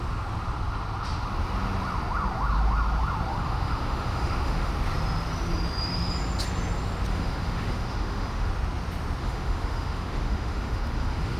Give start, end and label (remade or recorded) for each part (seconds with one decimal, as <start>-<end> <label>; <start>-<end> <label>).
0.0-3.3 recorded; 3.3-4.7 remade; 4.7-7.1 recorded; 7.1-8.5 remade; 8.5-9.2 recorded; 9.2-11.4 remade